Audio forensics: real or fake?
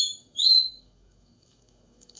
fake